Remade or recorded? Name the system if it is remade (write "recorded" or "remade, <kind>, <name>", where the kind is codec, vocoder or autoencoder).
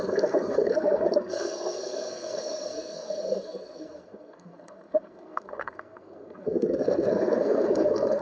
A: remade, codec, SNAC